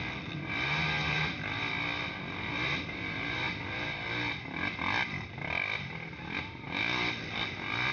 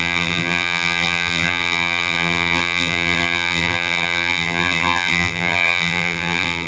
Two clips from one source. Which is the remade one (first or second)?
second